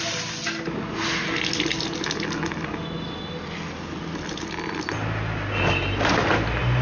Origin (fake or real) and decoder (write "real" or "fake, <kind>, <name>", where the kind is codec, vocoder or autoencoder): real